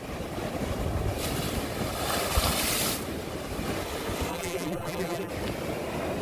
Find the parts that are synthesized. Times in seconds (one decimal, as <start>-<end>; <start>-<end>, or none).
4.3-5.3